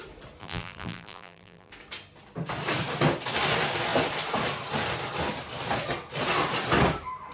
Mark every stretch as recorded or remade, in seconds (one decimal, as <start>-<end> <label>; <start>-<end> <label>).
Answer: 0.0-0.4 recorded; 0.4-1.7 remade; 1.7-7.3 recorded

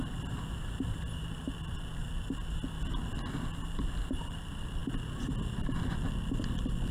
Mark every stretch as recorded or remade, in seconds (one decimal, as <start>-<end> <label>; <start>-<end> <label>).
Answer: 0.0-6.9 recorded

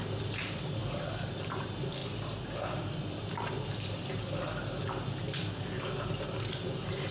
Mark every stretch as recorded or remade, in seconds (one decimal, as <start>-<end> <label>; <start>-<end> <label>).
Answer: 0.0-7.1 recorded